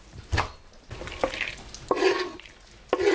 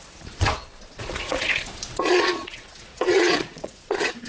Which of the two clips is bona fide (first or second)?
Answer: first